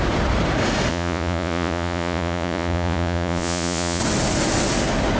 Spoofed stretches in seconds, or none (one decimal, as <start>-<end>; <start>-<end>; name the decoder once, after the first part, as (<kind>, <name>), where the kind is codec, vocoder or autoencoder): 0.9-4.0 (vocoder, Vocos)